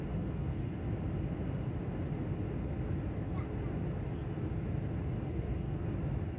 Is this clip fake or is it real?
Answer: real